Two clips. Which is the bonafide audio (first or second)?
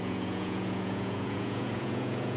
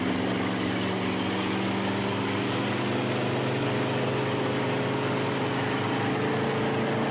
second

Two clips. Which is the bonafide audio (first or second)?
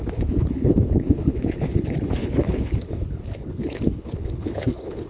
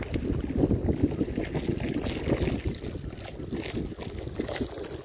second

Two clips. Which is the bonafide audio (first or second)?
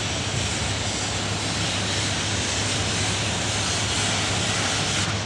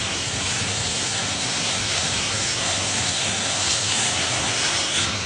first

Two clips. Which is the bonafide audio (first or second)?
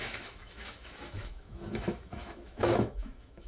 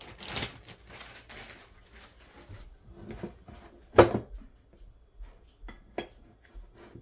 second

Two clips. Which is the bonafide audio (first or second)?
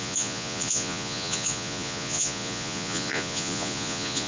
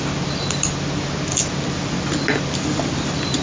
second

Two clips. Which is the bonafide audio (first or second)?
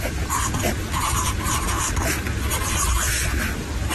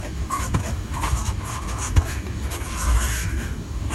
first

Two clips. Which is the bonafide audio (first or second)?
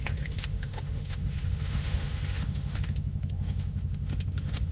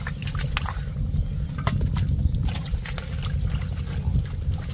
second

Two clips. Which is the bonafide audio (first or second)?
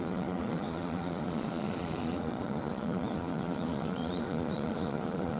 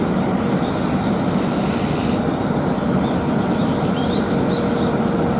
second